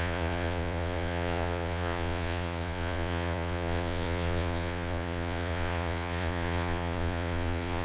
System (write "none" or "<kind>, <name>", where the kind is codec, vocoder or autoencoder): vocoder, Vocos